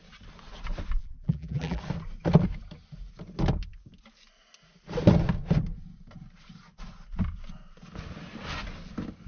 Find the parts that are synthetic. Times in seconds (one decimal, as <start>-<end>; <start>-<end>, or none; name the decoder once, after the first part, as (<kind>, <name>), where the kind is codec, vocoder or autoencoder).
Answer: 1.0-1.8 (vocoder, BigVGAN v2)